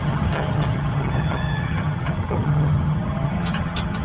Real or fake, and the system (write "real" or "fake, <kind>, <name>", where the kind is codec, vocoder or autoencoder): fake, vocoder, HiFi-GAN